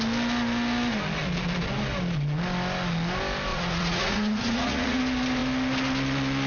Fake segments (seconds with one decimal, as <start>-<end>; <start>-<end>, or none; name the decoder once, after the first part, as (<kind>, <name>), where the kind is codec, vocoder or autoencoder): 3.5-5.0 (vocoder, Vocos)